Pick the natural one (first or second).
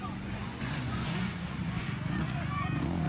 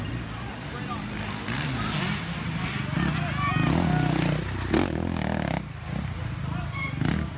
second